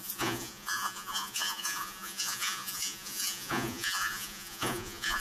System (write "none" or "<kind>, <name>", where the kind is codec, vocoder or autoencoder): vocoder, Vocos